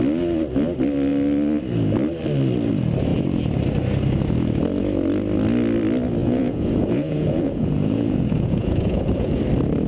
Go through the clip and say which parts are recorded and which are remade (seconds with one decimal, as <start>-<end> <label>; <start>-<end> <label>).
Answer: 0.0-6.2 recorded; 6.2-9.4 remade; 9.4-9.9 recorded